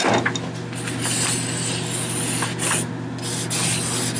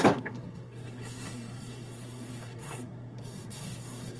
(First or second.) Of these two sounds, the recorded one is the first